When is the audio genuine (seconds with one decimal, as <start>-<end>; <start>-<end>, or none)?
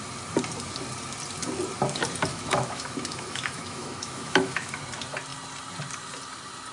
0.0-2.3; 4.8-6.7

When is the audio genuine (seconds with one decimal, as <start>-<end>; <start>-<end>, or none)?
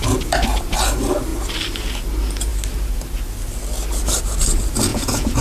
0.0-4.9